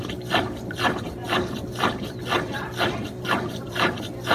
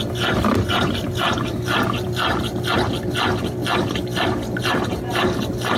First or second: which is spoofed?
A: first